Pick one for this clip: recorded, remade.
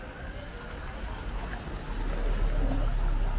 recorded